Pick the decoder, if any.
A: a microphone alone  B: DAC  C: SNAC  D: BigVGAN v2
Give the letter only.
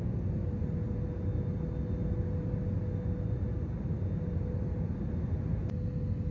A